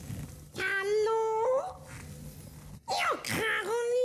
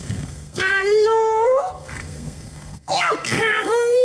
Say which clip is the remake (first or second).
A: second